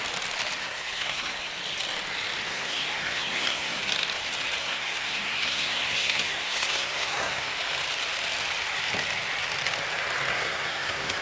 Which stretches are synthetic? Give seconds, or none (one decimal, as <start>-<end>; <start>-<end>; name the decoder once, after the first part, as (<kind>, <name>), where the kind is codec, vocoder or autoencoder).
0.6-1.5 (codec, SNAC); 2.5-3.8; 4.6-7.5; 10.3-11.2